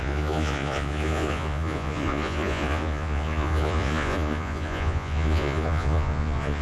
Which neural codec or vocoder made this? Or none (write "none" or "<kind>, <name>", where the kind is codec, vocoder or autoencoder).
vocoder, Vocos